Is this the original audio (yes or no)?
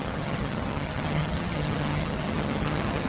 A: no